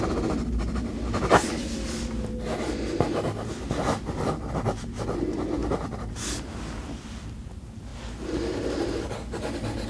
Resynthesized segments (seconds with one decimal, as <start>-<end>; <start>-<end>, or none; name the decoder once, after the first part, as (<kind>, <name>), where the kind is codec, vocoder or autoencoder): 5.6-6.5 (vocoder, BigVGAN v2); 7.9-8.9